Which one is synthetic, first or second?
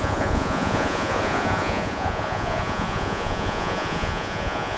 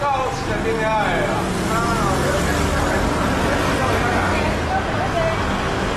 first